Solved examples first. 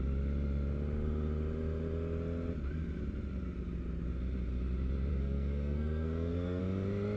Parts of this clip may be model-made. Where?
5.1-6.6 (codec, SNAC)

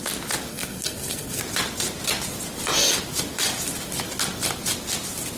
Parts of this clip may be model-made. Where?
0.5-1.4 (codec, SNAC)

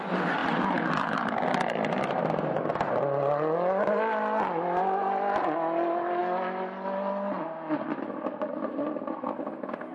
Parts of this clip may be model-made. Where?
none

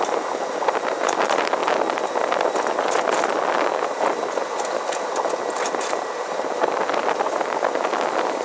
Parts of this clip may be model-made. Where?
none

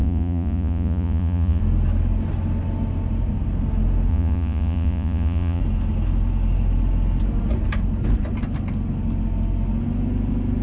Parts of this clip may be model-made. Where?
0.0-1.6 (vocoder, Vocos); 4.1-5.6

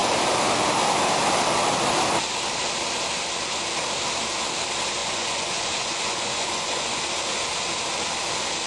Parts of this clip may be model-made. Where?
5.0-7.0 (vocoder, Vocos)

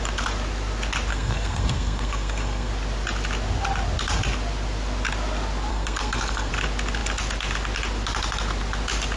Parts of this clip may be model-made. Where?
1.1-2.7 (codec, SNAC); 5.7-6.5